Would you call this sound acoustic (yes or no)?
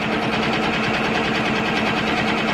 yes